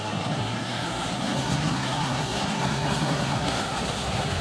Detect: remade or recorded remade